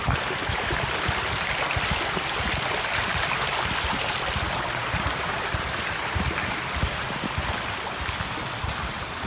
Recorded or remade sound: recorded